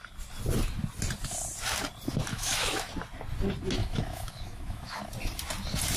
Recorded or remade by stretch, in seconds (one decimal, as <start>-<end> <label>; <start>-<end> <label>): 0.0-2.3 recorded; 2.3-2.9 remade; 2.9-3.8 recorded; 3.8-5.0 remade; 5.0-6.0 recorded